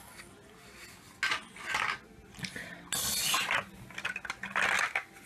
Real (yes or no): yes